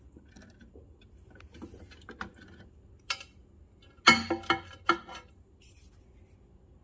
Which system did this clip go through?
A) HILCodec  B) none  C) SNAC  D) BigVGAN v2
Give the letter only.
B